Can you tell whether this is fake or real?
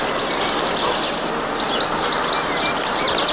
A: real